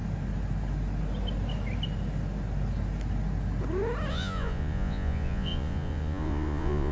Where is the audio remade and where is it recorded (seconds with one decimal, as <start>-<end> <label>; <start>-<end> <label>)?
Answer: 0.0-4.1 recorded; 4.1-6.9 remade